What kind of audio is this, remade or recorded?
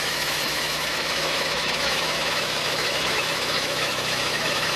remade